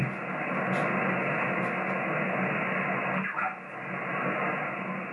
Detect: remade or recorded recorded